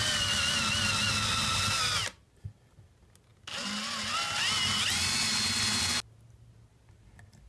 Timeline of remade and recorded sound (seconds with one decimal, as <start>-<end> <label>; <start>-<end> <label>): 0.0-7.5 recorded

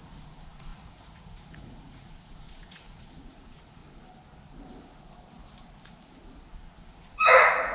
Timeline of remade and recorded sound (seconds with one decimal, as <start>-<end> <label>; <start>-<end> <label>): 0.0-3.8 remade; 3.8-6.5 recorded; 6.5-7.7 remade

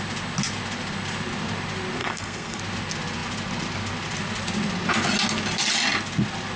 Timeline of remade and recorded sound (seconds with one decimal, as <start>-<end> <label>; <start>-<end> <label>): 0.0-2.0 recorded; 2.0-2.6 remade; 2.6-6.6 recorded

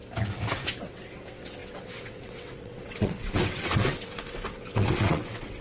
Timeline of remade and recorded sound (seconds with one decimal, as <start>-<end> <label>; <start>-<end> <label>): 0.0-0.8 recorded; 0.8-5.6 remade

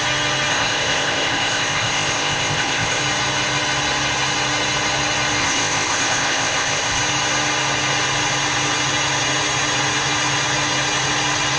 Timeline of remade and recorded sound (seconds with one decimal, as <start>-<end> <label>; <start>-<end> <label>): 0.0-0.5 recorded; 0.5-3.0 remade; 3.0-5.4 recorded; 5.4-7.0 remade; 7.0-11.6 recorded

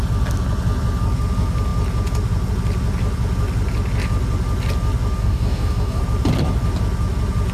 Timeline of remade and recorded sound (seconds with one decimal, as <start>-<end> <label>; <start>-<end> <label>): 0.0-5.2 recorded; 5.2-6.0 remade; 6.0-7.5 recorded

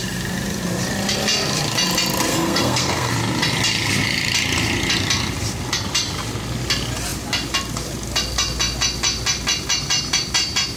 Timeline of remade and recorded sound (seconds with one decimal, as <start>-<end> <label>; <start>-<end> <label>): 0.0-2.3 recorded; 2.3-3.1 remade; 3.1-10.8 recorded